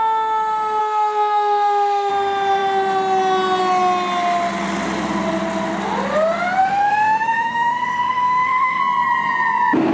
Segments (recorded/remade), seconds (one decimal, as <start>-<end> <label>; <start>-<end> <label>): 0.0-0.8 recorded; 0.8-2.1 remade; 2.1-6.6 recorded; 6.6-8.8 remade; 8.8-9.9 recorded